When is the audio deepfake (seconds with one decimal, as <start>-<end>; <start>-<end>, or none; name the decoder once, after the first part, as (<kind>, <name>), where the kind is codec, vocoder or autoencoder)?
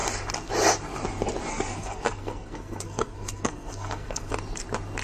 1.5-4.3 (codec, SNAC)